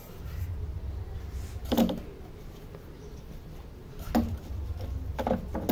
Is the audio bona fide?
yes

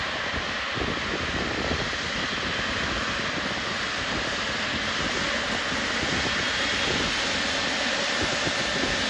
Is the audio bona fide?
yes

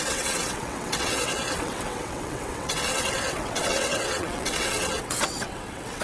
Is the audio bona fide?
no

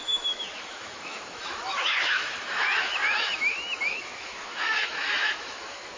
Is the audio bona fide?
no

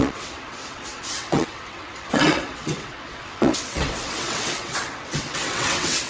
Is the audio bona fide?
no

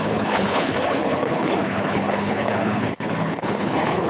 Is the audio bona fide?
no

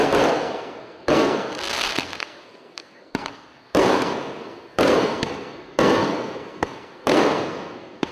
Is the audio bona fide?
no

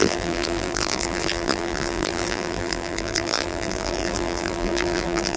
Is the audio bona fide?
no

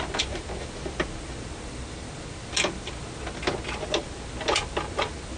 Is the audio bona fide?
yes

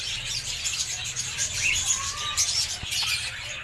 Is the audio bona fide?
yes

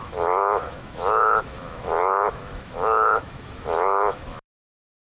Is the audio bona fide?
no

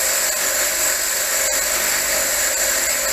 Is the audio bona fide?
yes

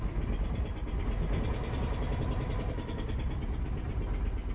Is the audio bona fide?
yes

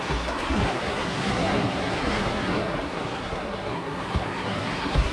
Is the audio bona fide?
no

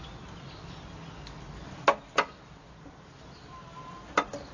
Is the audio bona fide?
yes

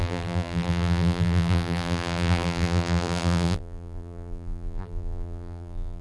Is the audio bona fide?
no